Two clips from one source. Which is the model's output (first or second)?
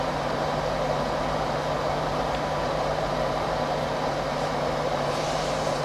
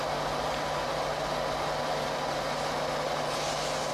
first